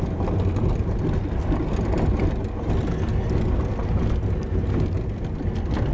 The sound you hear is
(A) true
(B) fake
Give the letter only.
A